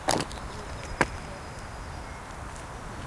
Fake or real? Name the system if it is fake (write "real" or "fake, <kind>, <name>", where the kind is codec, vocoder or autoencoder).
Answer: real